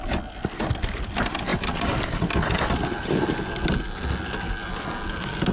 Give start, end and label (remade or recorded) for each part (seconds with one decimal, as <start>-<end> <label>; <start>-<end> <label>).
0.0-5.5 recorded